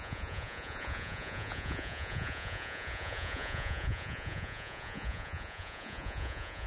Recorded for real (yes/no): no